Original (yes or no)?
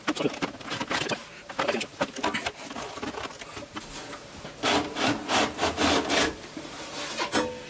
yes